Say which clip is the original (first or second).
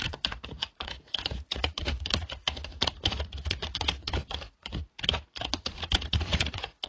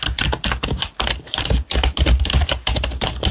second